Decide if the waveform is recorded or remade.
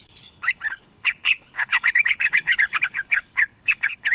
remade